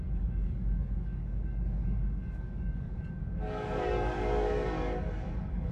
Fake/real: fake